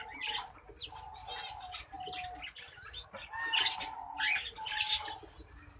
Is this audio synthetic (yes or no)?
no